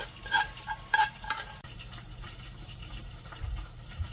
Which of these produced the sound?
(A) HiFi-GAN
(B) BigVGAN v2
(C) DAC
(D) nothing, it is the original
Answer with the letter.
B